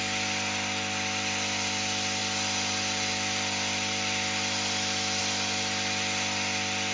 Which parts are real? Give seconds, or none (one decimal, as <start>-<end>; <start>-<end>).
0.0-6.9